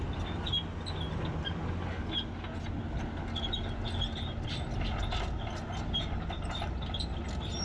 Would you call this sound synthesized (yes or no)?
no